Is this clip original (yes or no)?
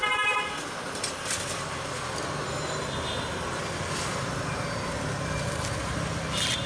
yes